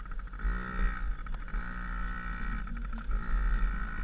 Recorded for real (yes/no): yes